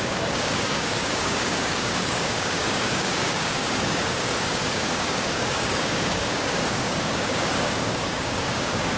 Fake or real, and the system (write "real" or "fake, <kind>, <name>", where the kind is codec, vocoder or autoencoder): fake, codec, DAC